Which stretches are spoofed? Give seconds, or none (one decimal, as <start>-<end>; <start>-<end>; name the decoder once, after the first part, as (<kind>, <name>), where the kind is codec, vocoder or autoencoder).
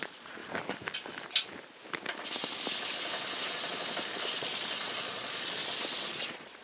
0.0-0.4 (vocoder, Vocos); 4.4-5.6; 6.1-6.6